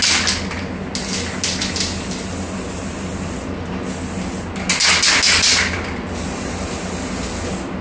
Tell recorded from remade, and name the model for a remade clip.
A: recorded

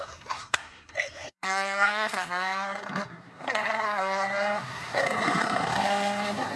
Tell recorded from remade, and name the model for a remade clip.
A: remade, codec, SNAC